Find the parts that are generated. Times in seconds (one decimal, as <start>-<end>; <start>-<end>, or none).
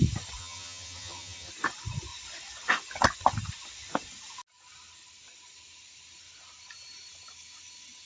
0.4-1.5